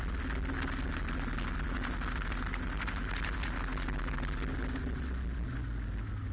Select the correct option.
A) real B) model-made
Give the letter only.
A